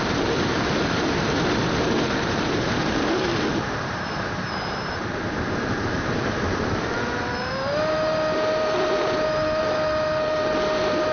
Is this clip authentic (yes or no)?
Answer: no